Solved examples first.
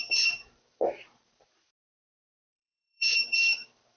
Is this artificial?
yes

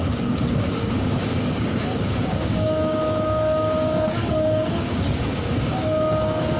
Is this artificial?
yes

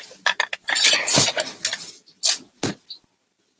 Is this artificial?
no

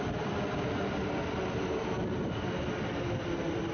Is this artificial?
no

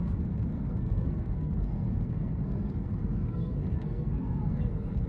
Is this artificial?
yes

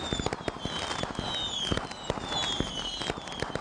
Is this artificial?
no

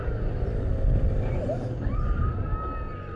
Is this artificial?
no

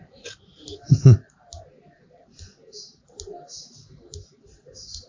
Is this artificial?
no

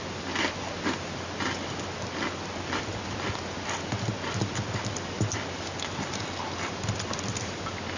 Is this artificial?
no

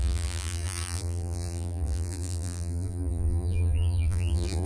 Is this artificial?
yes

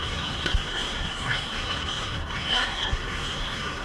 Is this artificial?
yes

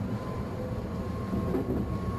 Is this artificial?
no